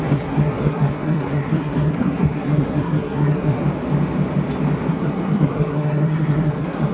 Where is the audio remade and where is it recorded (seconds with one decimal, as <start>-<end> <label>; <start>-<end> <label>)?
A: 0.0-3.6 remade; 3.6-4.9 recorded; 4.9-6.9 remade